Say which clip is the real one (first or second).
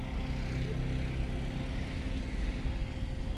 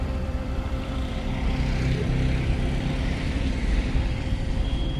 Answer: first